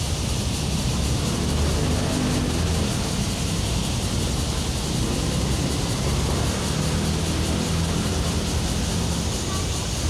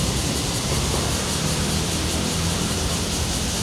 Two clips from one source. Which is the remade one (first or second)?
second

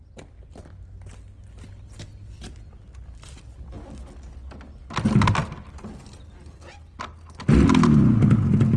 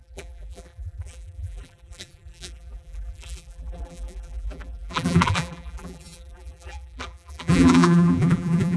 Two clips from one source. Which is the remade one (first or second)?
second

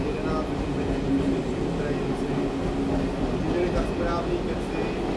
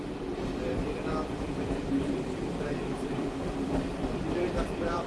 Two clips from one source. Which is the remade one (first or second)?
second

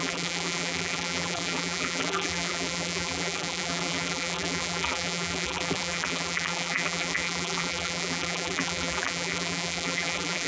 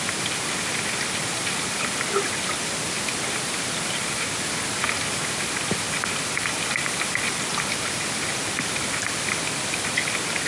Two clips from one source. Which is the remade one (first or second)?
first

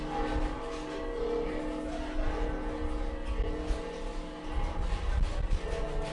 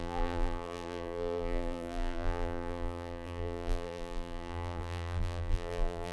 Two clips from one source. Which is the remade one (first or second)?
second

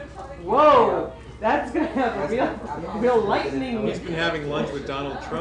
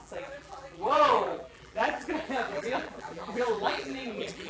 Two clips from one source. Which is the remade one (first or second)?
second